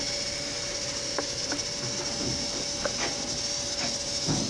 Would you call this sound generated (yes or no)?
no